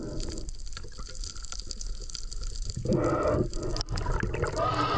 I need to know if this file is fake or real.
real